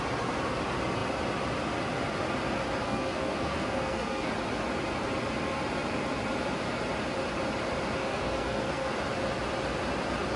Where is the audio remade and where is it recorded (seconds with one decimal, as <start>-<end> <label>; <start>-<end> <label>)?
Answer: 0.0-2.8 recorded; 2.8-4.3 remade; 4.3-8.0 recorded; 8.0-8.9 remade; 8.9-10.4 recorded